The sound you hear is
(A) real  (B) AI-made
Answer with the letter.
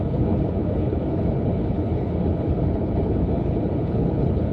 B